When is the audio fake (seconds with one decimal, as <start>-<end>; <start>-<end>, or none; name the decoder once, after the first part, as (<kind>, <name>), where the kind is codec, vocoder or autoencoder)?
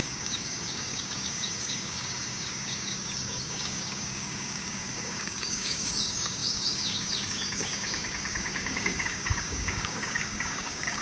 0.0-11.0 (codec, DAC)